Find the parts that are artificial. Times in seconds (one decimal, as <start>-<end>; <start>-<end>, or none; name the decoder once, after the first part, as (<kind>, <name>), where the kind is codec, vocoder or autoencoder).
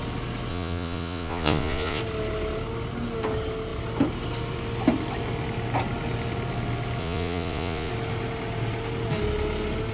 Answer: 0.5-2.0 (vocoder, Vocos); 7.0-7.9